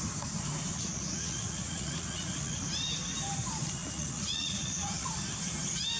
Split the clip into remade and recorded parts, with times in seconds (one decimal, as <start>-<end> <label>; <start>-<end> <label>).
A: 0.0-0.7 recorded; 0.7-2.6 remade; 2.6-3.8 recorded; 3.8-5.1 remade; 5.1-6.0 recorded